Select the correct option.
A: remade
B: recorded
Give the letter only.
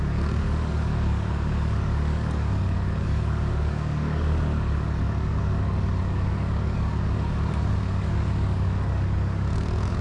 A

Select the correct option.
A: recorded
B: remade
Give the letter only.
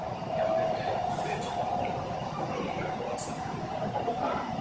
B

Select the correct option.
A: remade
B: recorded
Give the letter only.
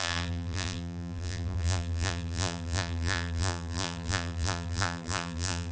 A